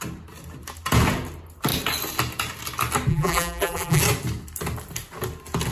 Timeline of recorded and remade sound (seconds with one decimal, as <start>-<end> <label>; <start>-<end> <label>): 0.0-3.1 recorded; 3.1-4.0 remade; 4.0-5.7 recorded